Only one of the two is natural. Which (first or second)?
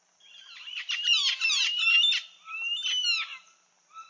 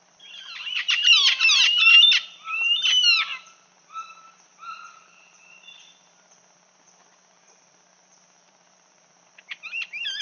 first